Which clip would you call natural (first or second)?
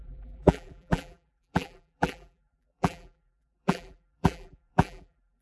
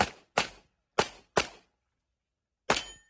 second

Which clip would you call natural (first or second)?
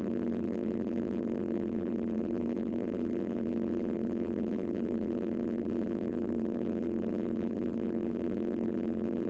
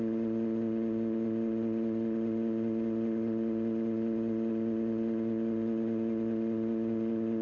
second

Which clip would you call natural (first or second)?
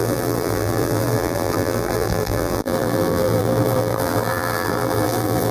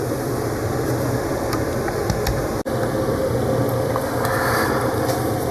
second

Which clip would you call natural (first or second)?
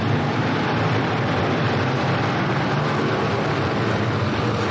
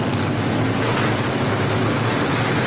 second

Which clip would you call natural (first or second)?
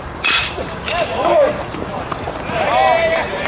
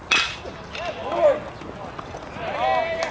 second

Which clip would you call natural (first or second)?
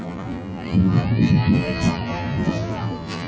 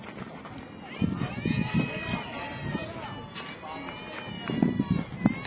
second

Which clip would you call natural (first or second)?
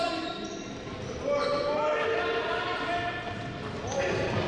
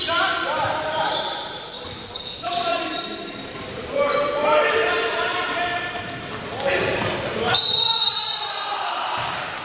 first